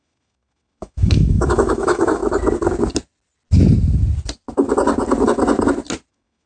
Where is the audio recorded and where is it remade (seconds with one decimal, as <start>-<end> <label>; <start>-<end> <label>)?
0.0-2.2 remade; 2.2-6.1 recorded; 6.1-6.5 remade